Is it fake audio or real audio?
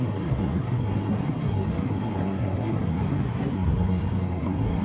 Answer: fake